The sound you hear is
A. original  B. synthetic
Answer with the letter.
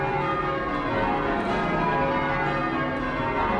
A